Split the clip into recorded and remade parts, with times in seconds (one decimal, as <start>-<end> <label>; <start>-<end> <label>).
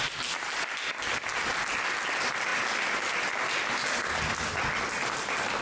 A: 0.0-5.6 recorded